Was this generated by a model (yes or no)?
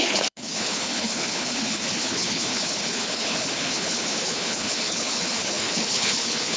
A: yes